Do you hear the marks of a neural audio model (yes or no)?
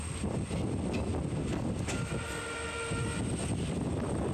no